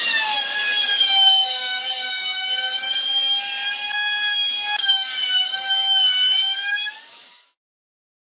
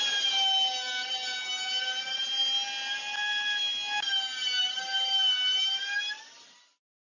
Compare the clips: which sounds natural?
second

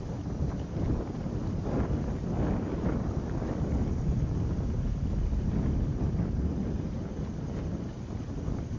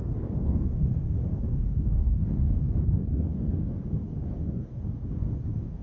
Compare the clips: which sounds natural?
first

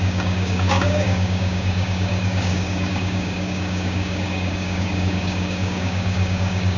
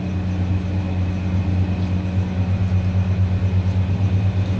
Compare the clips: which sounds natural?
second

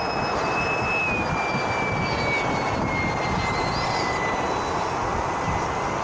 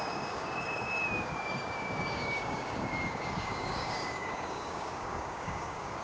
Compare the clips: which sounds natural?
first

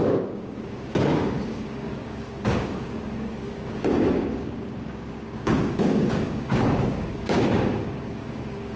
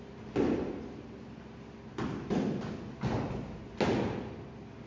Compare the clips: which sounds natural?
second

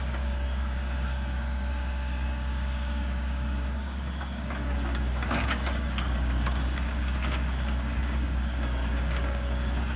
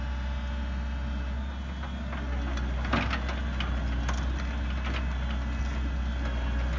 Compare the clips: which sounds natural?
second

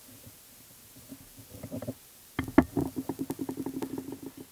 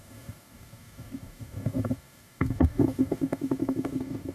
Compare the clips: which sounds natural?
first